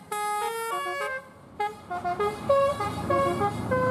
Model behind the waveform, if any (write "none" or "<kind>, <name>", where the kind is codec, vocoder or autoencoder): none